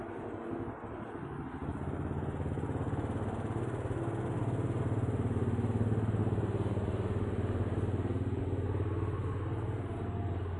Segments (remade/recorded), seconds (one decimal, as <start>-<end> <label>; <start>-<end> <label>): 0.0-6.2 recorded; 6.2-8.4 remade; 8.4-10.6 recorded